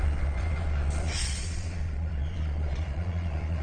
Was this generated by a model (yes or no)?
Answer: yes